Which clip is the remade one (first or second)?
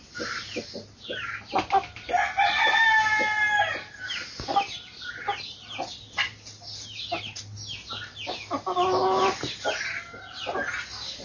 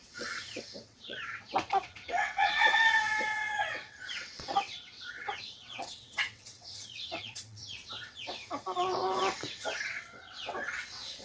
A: second